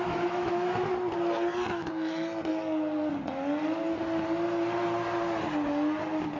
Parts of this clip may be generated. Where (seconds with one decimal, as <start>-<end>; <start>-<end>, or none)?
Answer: 0.0-0.9; 1.7-2.5